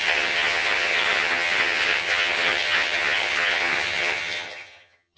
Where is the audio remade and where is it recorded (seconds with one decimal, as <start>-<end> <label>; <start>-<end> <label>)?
0.0-5.2 remade